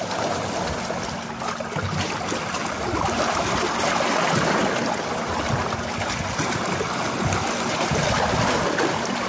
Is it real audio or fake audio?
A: real